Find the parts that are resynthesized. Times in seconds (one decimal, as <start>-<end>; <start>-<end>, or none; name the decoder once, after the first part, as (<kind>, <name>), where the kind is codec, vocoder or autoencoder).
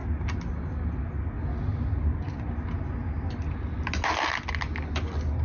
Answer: none